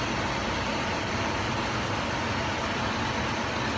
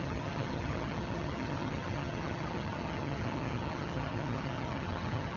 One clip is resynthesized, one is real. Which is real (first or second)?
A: first